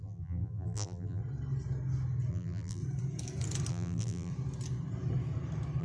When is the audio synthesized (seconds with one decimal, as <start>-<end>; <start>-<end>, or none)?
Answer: 0.0-1.2; 2.3-2.8; 3.7-4.3

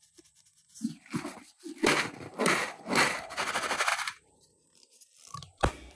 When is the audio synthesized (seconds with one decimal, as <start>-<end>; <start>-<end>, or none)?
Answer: 2.3-3.5; 3.9-4.7

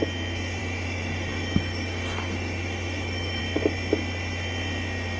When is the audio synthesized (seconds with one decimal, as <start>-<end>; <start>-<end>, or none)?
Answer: 0.6-3.4